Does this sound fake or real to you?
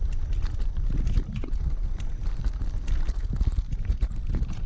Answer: real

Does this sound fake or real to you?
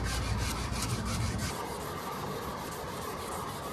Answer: real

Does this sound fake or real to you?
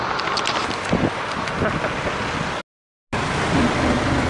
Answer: real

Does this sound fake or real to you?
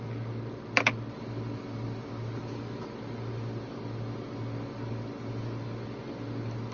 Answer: real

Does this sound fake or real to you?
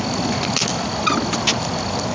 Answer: real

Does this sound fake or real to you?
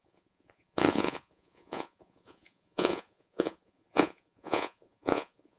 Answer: fake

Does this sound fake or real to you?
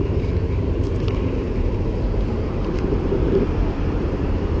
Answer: fake